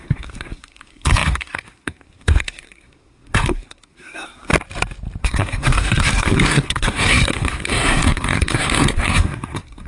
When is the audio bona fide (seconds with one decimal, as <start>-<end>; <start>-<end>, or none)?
4.5-5.2